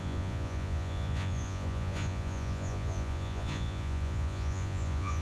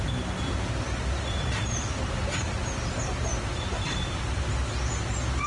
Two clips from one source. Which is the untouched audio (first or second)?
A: second